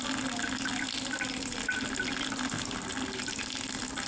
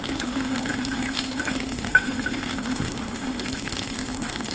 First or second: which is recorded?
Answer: first